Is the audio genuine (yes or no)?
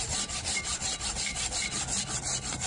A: yes